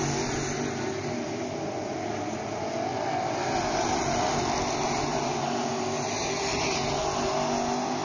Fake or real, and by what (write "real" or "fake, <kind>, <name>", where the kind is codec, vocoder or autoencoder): real